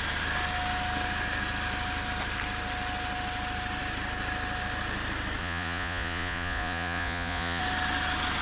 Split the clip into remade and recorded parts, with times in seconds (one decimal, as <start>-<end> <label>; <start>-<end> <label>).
0.0-5.4 recorded; 5.4-7.6 remade; 7.6-8.4 recorded